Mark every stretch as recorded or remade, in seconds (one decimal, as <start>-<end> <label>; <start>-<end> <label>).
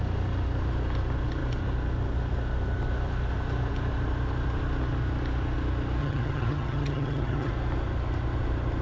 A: 0.0-6.0 recorded; 6.0-7.5 remade; 7.5-8.8 recorded